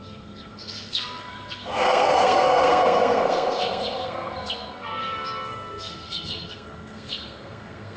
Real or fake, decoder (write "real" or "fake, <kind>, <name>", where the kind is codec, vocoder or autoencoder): fake, codec, SNAC